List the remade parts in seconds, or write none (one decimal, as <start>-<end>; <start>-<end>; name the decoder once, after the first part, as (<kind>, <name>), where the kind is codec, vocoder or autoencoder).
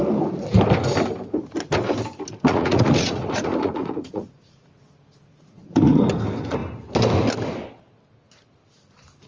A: 2.5-4.7 (vocoder, Vocos); 5.3-6.0